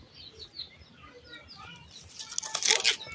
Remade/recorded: recorded